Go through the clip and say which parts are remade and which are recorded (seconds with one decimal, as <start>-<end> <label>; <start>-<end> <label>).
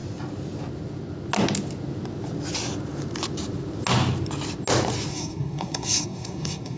0.0-5.1 recorded; 5.1-6.8 remade